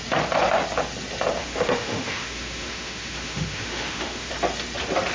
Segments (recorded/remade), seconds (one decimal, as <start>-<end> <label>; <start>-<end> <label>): 0.0-1.4 recorded; 1.4-4.3 remade; 4.3-5.1 recorded